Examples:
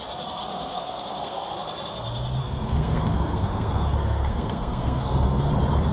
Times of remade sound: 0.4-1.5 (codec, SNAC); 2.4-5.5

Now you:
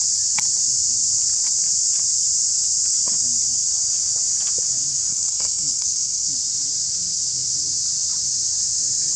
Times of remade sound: 5.1-6.3 (codec, SNAC)

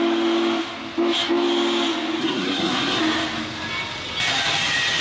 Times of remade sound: 2.2-3.0 (codec, SNAC)

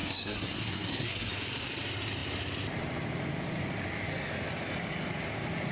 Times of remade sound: 0.0-1.3 (codec, SNAC)

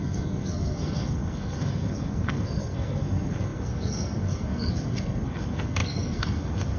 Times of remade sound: 0.0-6.8 (codec, SNAC)

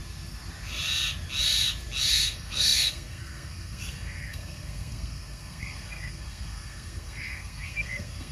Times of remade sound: 2.1-8.3 (codec, SNAC)

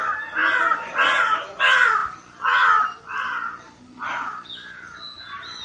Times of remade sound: none

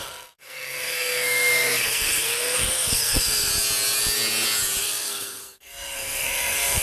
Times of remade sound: 0.0-3.5 (codec, SNAC); 4.8-6.8